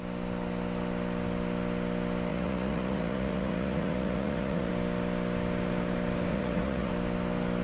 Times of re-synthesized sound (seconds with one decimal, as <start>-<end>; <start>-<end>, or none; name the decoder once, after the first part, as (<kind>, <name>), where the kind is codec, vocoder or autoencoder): 2.3-4.7 (vocoder, Vocos); 6.3-6.9